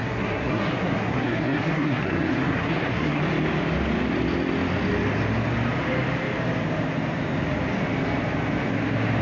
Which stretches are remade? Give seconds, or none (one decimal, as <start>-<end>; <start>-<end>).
0.0-3.2